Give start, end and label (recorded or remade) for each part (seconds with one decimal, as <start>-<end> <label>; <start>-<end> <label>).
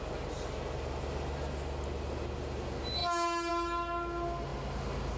0.0-5.2 recorded